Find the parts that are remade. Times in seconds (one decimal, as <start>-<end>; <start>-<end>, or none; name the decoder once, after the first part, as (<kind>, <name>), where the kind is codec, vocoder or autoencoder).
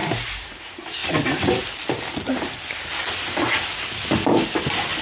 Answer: 0.0-0.6 (vocoder, BigVGAN v2)